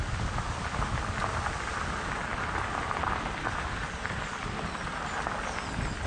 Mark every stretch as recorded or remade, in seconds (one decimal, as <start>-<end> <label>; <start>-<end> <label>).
0.0-6.1 recorded